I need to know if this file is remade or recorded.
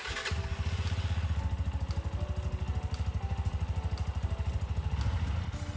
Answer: recorded